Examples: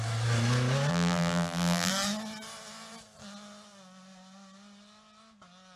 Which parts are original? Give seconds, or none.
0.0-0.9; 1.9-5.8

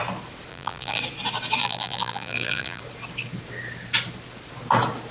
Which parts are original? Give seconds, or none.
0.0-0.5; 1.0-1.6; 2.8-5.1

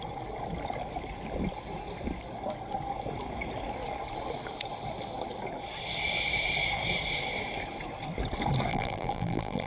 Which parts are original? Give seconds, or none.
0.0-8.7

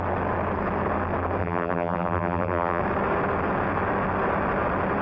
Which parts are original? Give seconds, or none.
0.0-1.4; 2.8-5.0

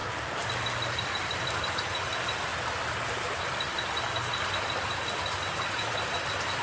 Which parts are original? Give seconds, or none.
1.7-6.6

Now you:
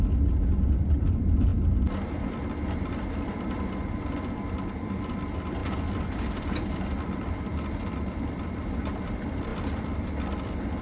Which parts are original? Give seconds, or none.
1.5-3.1

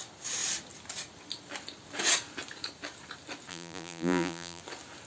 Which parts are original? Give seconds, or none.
0.0-3.5; 4.6-5.1